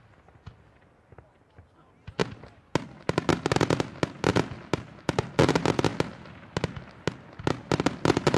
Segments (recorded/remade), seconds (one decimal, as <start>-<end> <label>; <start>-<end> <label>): 0.0-8.4 recorded